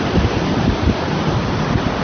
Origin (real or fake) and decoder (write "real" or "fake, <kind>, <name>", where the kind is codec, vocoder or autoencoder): real